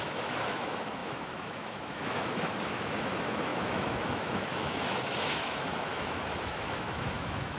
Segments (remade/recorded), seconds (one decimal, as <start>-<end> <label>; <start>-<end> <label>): 0.0-7.6 remade